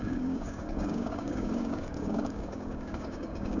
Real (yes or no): no